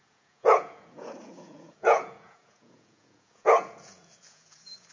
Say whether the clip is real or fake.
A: fake